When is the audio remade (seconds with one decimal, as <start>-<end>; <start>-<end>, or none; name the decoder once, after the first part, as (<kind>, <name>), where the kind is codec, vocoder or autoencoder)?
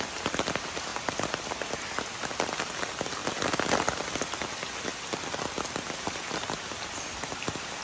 none